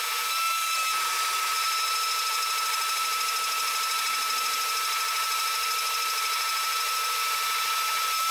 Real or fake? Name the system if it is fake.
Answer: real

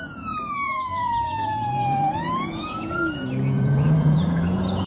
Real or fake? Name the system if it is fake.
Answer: fake, vocoder, Vocos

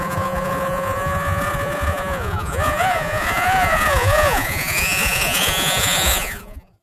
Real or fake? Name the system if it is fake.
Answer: fake, vocoder, Vocos